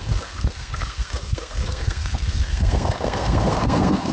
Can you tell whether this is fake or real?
fake